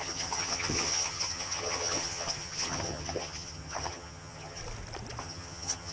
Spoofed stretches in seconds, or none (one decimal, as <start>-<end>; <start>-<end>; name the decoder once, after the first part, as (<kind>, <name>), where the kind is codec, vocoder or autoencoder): 0.0-4.6 (vocoder, HiFi-GAN); 5.2-5.9

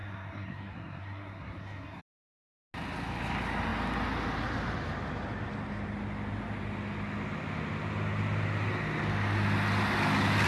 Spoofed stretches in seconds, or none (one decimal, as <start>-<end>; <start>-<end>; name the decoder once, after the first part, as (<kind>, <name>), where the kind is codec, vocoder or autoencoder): 0.0-2.0 (codec, SNAC)

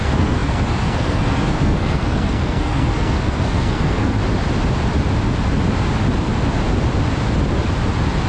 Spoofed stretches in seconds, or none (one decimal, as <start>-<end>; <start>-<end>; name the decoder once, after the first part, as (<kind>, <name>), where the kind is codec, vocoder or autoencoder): 0.0-4.2 (codec, SNAC)

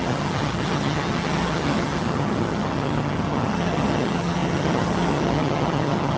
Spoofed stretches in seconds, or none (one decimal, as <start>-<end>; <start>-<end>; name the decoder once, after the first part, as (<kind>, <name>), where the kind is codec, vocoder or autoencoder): 0.0-6.2 (vocoder, HiFi-GAN)

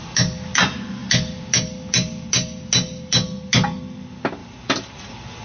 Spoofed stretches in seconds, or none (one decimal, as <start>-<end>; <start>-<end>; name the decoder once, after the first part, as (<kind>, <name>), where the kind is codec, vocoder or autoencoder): 4.4-5.4 (vocoder, BigVGAN v2)

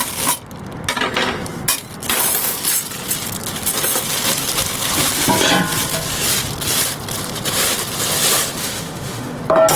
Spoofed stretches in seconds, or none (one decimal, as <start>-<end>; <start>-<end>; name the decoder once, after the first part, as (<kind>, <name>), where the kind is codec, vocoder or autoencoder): 8.6-9.4 (autoencoder, DAC-VAE)

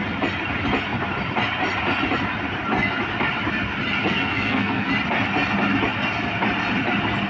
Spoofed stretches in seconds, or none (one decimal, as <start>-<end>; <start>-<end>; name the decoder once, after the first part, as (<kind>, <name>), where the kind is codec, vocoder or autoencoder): 4.0-4.9 (codec, SNAC)